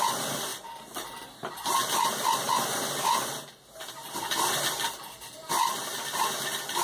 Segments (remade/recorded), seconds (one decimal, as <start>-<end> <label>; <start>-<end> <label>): 0.0-0.5 recorded; 0.5-1.3 remade; 1.3-4.0 recorded; 4.0-5.5 remade; 5.5-6.8 recorded